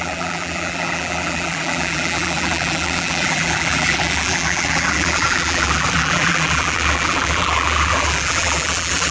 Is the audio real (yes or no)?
no